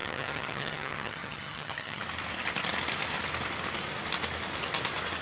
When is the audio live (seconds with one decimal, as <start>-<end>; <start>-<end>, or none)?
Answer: 2.0-5.2